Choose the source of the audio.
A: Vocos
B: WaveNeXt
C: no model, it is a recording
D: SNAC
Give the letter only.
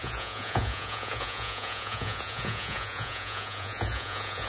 A